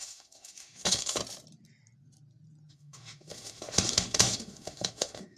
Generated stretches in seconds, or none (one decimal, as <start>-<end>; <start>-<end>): 0.0-1.2; 2.7-5.4